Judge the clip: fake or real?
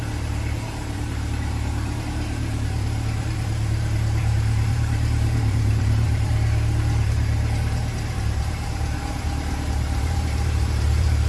fake